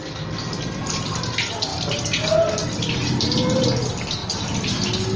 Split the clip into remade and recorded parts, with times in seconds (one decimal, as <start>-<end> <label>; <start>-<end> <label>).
0.0-5.2 recorded